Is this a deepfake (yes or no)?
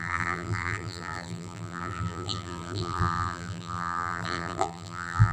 yes